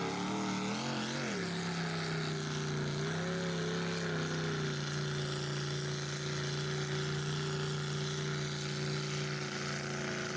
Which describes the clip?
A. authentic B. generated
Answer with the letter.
A